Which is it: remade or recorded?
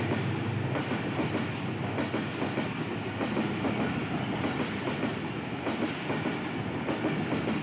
recorded